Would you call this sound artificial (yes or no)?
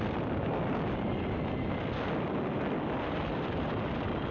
no